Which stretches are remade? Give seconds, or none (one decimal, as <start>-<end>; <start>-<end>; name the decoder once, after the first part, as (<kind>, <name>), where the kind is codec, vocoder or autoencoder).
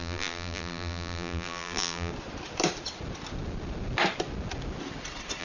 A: 0.0-2.1 (vocoder, BigVGAN v2)